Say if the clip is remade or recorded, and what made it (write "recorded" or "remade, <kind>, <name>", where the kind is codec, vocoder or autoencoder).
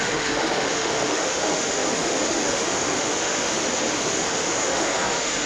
remade, autoencoder, DAC-VAE